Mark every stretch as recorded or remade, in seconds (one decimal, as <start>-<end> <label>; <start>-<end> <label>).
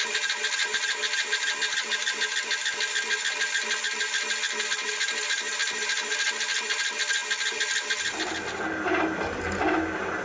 0.0-10.2 recorded